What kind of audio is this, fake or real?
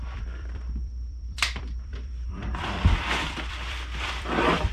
fake